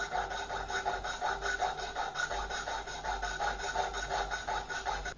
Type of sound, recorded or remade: recorded